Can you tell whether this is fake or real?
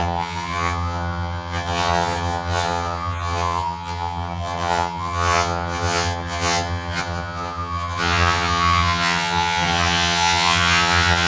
fake